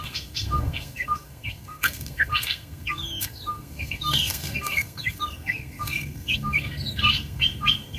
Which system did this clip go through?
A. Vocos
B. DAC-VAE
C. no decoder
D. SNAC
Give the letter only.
D